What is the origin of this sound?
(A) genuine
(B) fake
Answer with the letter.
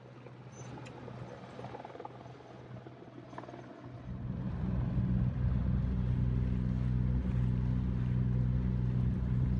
A